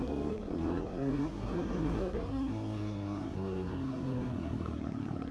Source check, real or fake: fake